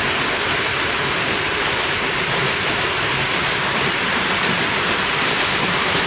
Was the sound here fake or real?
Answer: fake